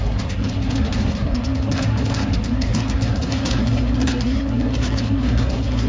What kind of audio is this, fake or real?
fake